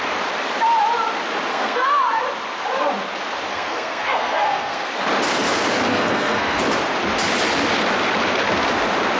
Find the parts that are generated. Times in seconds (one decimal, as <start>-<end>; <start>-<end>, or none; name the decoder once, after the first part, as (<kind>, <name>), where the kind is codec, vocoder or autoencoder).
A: 1.5-2.2 (codec, SNAC); 3.5-4.9; 5.9-6.6